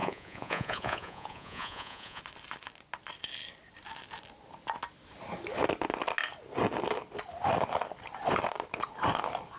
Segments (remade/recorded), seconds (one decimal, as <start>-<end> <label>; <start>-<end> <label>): 0.0-2.2 remade; 2.2-9.6 recorded